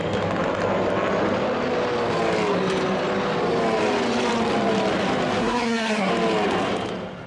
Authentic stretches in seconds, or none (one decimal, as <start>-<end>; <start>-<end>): 0.0-5.4; 6.1-7.3

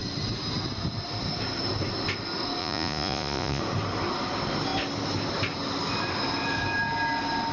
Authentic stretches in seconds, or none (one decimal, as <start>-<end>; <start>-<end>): 0.0-2.6; 3.6-7.5

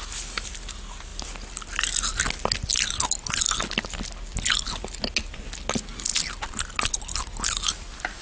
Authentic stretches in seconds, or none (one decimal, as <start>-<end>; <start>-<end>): 0.0-8.2

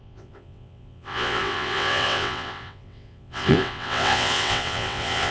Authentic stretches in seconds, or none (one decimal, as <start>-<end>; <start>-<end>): none

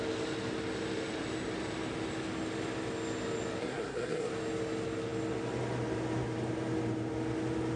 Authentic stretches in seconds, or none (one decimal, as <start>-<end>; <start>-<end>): 0.0-3.6; 4.3-7.8

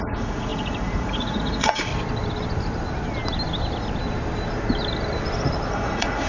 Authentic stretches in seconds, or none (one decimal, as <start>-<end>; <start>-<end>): 1.9-5.7

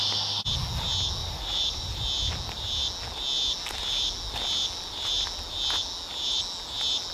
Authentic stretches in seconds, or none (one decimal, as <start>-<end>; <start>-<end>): 0.0-1.2; 1.9-7.1

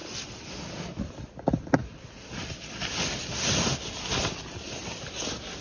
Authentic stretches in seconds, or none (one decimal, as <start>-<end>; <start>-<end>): 0.0-5.6